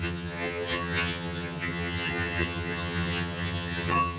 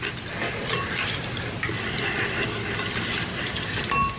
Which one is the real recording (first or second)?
second